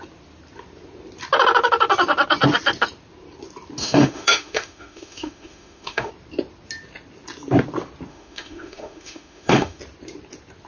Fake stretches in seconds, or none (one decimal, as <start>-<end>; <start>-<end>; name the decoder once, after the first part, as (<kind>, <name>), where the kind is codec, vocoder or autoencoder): 3.8-6.1 (autoencoder, DAC-VAE); 8.1-9.8